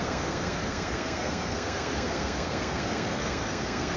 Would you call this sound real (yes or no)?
no